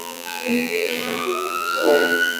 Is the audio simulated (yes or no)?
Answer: yes